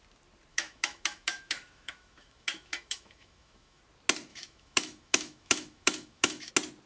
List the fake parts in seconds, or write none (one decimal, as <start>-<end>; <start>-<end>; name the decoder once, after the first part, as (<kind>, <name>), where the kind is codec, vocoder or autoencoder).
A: 0.5-3.8 (autoencoder, DAC-VAE); 4.3-6.5